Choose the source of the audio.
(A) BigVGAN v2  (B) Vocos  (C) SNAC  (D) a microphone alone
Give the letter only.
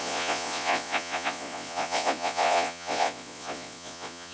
B